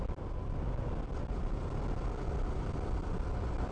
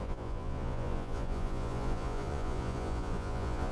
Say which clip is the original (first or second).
first